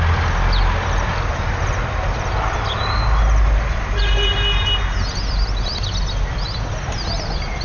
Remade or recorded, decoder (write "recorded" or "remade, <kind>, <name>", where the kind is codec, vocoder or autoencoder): recorded